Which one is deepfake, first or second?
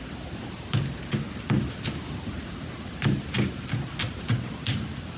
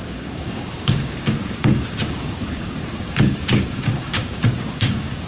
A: second